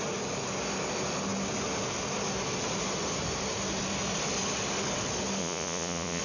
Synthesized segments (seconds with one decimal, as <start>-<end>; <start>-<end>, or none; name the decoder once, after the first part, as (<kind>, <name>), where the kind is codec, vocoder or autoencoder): 5.4-6.2 (vocoder, Vocos)